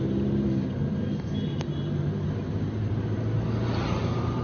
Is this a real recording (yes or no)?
yes